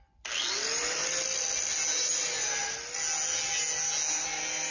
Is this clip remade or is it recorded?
recorded